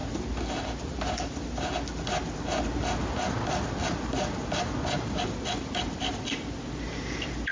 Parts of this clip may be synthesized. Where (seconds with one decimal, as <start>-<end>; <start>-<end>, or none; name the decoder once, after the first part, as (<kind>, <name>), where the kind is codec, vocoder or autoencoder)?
none